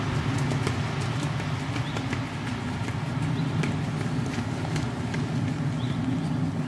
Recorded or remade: recorded